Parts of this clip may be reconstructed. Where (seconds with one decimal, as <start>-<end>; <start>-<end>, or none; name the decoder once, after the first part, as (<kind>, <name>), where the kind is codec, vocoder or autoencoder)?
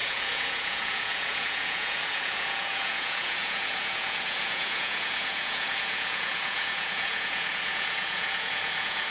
0.0-9.1 (vocoder, Vocos)